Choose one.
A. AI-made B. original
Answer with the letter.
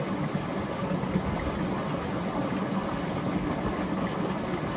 B